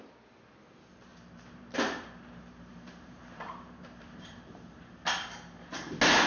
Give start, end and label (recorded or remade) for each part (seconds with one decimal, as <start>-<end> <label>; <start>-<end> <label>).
0.0-1.1 recorded; 1.1-4.9 remade; 4.9-6.3 recorded